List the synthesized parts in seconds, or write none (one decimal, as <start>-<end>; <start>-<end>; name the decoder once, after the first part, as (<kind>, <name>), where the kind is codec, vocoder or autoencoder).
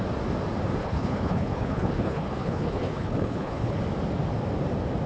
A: 0.8-3.8 (codec, HILCodec)